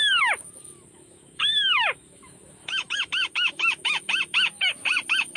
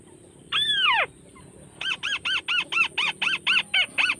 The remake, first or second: first